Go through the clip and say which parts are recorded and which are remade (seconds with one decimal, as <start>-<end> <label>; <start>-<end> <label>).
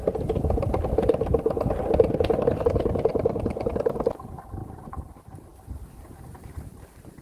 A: 0.0-4.6 recorded; 4.6-5.1 remade; 5.1-7.2 recorded